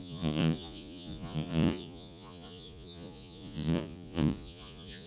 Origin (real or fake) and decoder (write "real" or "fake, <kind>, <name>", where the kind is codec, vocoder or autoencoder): fake, vocoder, Vocos